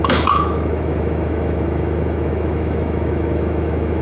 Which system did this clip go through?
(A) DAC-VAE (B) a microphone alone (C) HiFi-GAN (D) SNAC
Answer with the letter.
A